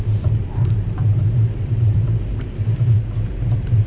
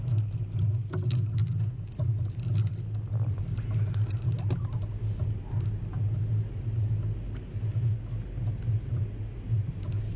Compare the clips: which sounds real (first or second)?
second